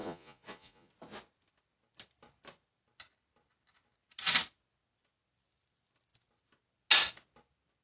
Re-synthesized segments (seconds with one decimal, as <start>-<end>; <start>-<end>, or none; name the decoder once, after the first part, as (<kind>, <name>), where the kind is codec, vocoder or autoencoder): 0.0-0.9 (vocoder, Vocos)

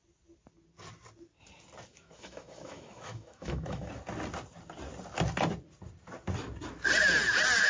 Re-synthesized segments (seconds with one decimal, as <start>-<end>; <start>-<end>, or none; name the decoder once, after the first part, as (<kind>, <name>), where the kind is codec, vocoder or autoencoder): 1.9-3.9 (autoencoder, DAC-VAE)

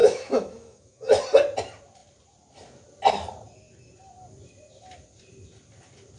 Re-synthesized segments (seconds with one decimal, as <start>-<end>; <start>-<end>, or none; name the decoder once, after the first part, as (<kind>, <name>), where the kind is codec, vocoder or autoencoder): 0.0-1.2 (autoencoder, DAC-VAE)